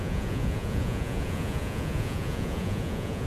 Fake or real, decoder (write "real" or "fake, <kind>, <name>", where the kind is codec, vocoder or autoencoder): fake, vocoder, Vocos